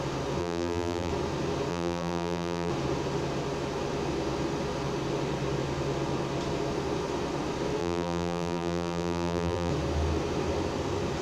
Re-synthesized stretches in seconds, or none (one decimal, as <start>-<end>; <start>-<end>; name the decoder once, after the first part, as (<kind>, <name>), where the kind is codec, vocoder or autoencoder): 0.4-1.1 (vocoder, BigVGAN v2); 1.7-2.7; 7.8-9.7